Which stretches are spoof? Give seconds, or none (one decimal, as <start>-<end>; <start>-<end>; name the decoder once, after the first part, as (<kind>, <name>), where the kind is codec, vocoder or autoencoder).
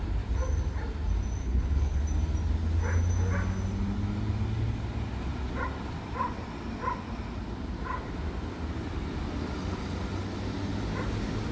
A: 1.4-2.0 (codec, HILCodec)